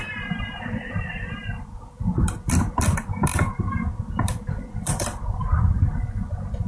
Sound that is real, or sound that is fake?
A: fake